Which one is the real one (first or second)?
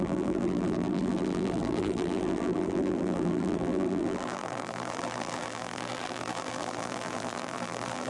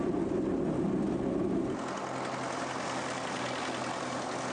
second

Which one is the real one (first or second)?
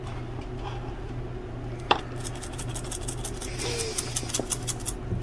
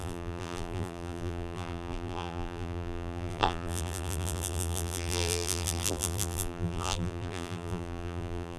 first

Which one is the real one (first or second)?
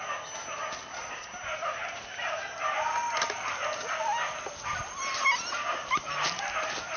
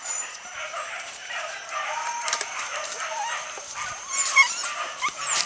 first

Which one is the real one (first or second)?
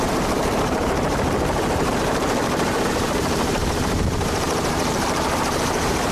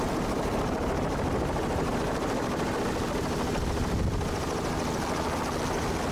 second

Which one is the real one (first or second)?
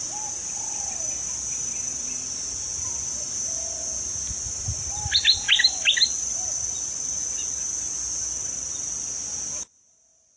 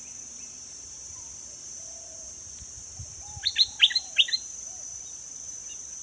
first